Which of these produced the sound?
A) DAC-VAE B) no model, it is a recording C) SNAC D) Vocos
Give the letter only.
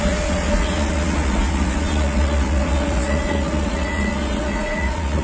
D